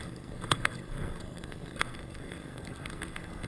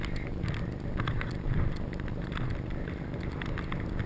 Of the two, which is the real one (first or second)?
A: second